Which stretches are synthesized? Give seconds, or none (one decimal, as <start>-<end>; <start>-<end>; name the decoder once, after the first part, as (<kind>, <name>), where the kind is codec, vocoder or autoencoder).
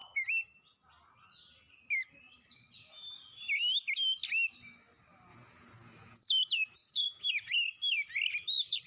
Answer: 5.3-6.2 (vocoder, Vocos)